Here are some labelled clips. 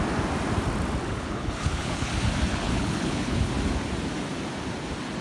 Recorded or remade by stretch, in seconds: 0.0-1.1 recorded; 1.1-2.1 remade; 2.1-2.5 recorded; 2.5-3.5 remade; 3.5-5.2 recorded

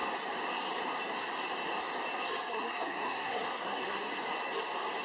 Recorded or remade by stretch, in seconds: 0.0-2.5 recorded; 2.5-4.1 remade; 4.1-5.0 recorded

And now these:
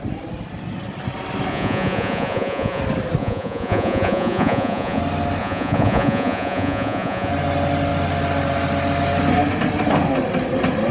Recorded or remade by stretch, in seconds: 0.0-1.5 recorded; 1.5-2.8 remade; 2.8-3.2 recorded; 3.2-5.0 remade; 5.0-5.4 recorded; 5.4-7.3 remade; 7.3-10.9 recorded